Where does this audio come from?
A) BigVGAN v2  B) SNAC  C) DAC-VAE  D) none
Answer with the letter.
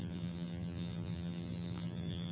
A